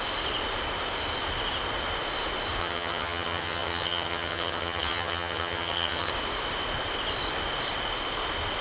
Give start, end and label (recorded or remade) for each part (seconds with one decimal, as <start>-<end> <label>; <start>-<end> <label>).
0.0-2.6 recorded; 2.6-6.1 remade; 6.1-8.6 recorded